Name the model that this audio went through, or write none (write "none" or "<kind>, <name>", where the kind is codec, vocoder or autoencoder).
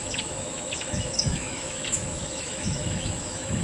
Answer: autoencoder, DAC-VAE